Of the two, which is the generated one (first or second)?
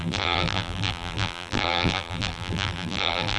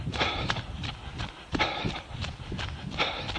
first